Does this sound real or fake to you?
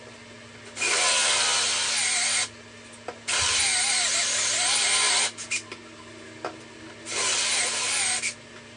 real